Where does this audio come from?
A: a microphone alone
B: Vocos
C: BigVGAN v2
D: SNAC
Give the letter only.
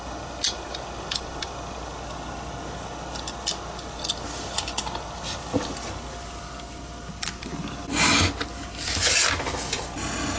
A